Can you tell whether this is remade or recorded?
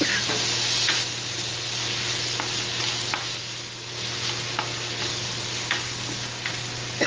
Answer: recorded